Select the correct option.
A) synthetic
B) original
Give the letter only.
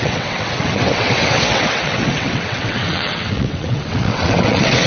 A